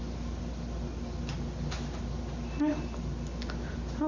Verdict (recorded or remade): recorded